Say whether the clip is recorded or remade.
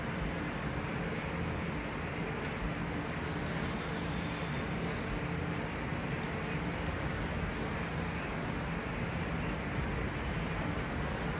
recorded